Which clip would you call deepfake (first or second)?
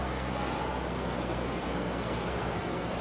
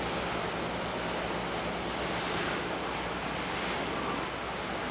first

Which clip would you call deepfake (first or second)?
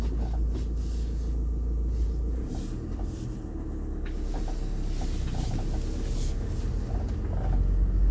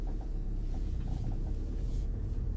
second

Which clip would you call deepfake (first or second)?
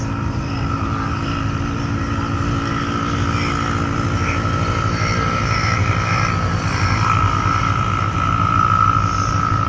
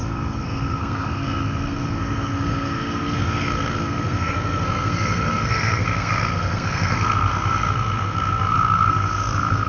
second